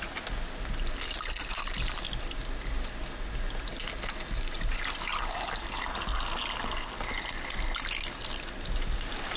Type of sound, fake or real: real